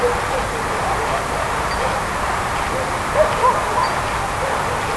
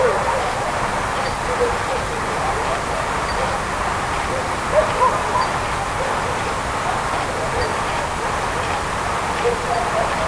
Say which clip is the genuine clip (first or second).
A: first